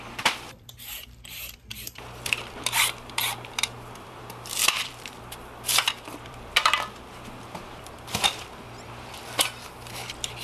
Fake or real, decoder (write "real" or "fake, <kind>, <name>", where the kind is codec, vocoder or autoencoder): fake, vocoder, BigVGAN v2